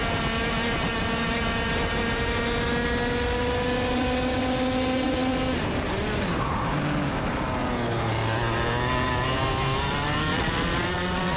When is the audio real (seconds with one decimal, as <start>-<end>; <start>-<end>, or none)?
0.0-10.3